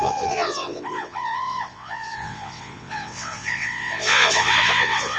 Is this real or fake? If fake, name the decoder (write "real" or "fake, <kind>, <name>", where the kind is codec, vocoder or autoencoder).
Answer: fake, vocoder, WaveNeXt